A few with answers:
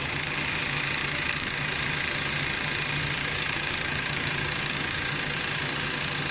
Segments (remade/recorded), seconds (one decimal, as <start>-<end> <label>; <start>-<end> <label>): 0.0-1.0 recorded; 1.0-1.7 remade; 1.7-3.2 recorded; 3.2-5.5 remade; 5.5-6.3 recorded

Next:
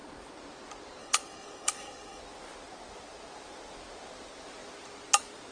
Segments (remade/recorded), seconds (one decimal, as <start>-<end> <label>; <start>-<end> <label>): 0.0-1.0 recorded; 1.0-2.2 remade; 2.2-5.5 recorded

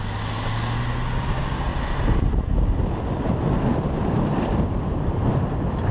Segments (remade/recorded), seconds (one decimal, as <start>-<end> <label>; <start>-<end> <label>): 0.0-1.7 recorded; 1.7-2.8 remade; 2.8-3.7 recorded; 3.7-5.4 remade; 5.4-5.9 recorded

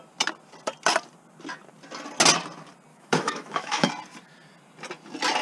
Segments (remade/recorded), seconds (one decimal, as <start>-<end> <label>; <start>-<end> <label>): 0.0-2.9 recorded; 2.9-3.9 remade; 3.9-5.4 recorded

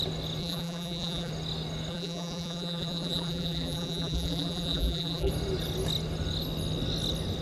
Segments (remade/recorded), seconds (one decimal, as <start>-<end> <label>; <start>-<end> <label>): 0.0-0.4 recorded; 0.4-1.3 remade; 1.3-1.9 recorded; 1.9-5.3 remade; 5.3-7.4 recorded

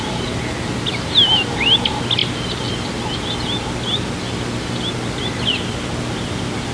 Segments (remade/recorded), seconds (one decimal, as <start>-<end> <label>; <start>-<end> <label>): 0.0-6.7 recorded

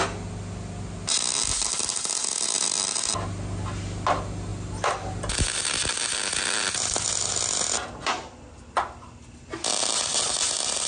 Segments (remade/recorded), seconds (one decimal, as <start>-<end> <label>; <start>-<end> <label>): 0.0-10.9 recorded